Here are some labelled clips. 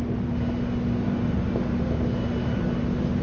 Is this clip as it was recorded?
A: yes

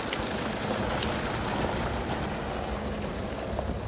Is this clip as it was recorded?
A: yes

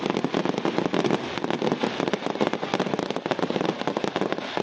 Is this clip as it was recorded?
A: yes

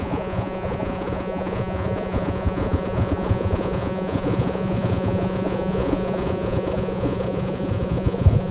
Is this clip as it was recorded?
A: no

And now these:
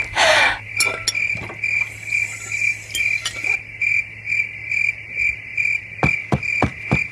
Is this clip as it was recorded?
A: yes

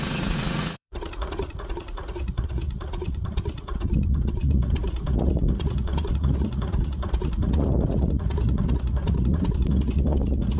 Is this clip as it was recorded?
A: no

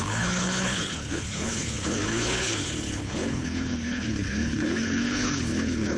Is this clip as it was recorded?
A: no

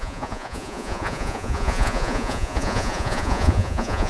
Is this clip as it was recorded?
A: no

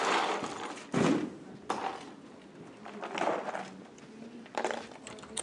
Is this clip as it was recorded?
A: yes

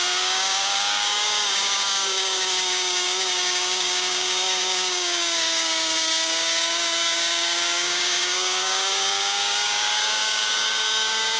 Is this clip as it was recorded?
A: no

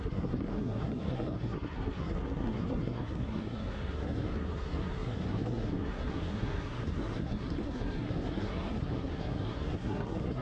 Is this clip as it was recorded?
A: no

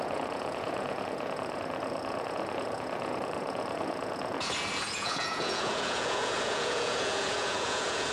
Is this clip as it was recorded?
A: no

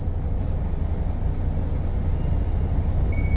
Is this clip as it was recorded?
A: yes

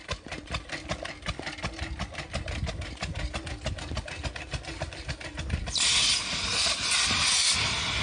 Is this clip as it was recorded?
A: yes